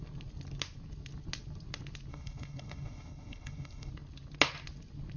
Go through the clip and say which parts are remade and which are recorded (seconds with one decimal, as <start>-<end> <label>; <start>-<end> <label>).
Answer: 0.0-2.1 recorded; 2.1-3.9 remade; 3.9-5.2 recorded